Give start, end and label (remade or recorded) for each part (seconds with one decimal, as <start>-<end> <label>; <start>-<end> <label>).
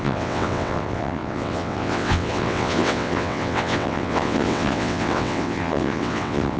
0.0-6.6 remade